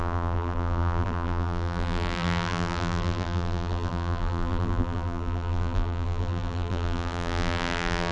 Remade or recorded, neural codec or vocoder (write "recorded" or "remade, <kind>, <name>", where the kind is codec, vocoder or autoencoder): remade, vocoder, BigVGAN v2